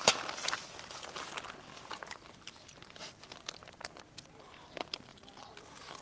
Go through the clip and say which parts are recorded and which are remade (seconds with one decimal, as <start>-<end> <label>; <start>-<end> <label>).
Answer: 0.0-1.7 recorded; 1.7-2.8 remade; 2.8-6.0 recorded